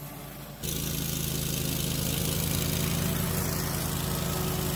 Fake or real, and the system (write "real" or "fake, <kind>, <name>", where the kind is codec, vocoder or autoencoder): real